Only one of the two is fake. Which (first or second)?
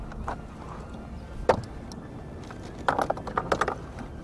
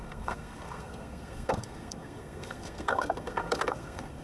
second